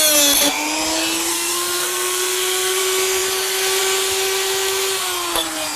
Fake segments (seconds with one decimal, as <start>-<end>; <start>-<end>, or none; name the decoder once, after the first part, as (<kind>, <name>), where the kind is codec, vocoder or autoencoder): 1.3-2.8 (codec, SNAC)